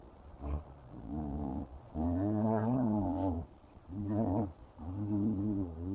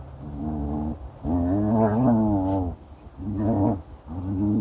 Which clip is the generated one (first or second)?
first